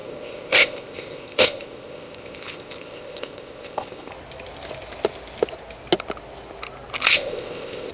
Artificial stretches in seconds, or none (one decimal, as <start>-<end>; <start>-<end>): 0.0-4.1; 7.1-7.9